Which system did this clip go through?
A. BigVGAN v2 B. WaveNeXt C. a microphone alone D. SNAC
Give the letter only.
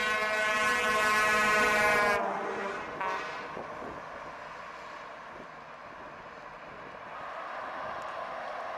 C